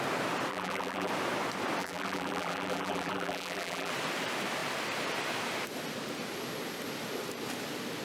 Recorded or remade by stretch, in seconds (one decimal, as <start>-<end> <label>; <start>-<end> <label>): 0.0-0.5 recorded; 0.5-1.1 remade; 1.1-1.8 recorded; 1.8-3.9 remade; 3.9-8.0 recorded

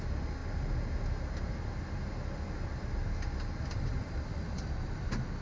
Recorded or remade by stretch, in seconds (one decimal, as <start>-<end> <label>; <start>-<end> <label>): 0.0-3.9 recorded; 3.9-5.0 remade; 5.0-5.4 recorded

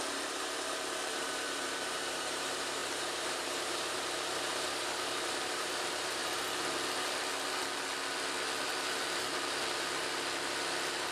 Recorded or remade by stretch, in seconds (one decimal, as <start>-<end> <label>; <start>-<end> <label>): 0.0-6.2 remade; 6.2-11.1 recorded

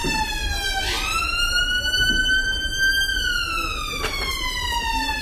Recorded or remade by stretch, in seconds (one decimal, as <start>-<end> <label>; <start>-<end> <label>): 0.0-1.2 recorded; 1.2-2.9 remade; 2.9-4.3 recorded; 4.3-5.2 remade

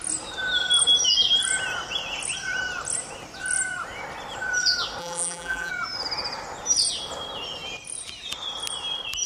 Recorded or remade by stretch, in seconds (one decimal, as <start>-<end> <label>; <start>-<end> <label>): 0.0-5.0 recorded; 5.0-5.7 remade; 5.7-9.3 recorded

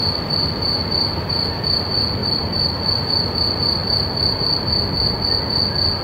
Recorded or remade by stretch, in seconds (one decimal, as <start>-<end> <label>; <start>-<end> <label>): 0.0-2.2 recorded; 2.2-3.3 remade; 3.3-6.0 recorded